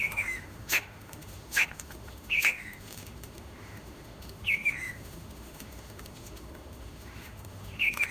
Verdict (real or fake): fake